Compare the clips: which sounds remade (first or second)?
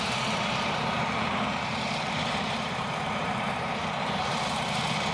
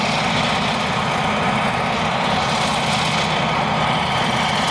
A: first